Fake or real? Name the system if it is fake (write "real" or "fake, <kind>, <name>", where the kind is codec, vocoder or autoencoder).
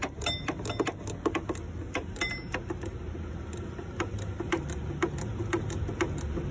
real